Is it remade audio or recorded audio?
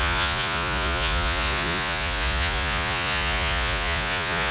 remade